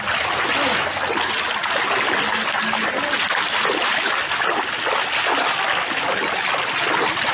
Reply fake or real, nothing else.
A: real